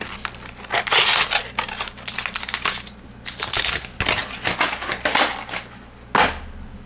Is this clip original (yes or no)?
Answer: yes